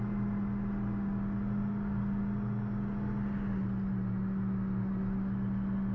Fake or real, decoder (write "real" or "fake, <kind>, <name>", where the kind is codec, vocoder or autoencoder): real